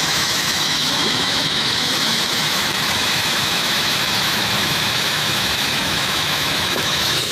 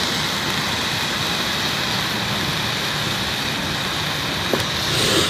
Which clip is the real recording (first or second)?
second